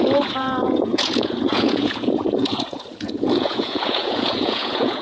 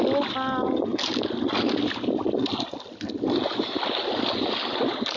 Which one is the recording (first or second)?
second